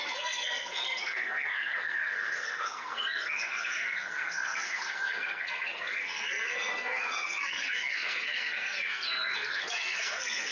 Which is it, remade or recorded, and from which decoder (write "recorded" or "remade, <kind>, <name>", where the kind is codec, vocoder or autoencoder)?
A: remade, codec, SNAC